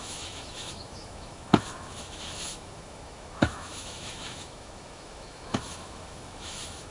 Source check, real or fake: fake